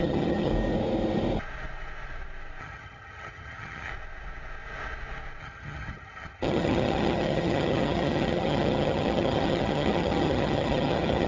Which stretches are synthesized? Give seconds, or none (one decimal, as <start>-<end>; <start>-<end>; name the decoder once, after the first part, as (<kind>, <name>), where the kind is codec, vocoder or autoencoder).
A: 0.0-0.5 (vocoder, HiFi-GAN); 2.6-3.9; 5.4-11.3